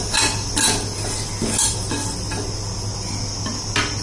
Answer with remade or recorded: recorded